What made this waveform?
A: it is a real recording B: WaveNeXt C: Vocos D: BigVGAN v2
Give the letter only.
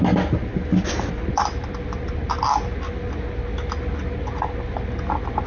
A